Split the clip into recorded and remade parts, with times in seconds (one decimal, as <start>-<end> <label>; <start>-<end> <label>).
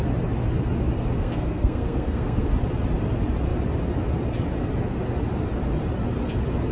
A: 0.0-1.2 recorded; 1.2-2.5 remade; 2.5-6.7 recorded